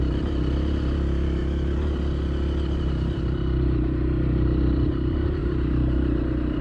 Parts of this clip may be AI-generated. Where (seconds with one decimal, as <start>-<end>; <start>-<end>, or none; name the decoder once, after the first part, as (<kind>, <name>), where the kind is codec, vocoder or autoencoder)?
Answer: 0.0-1.4 (vocoder, BigVGAN v2); 2.8-6.6